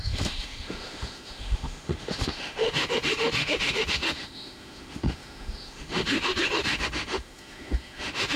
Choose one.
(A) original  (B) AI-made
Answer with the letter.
B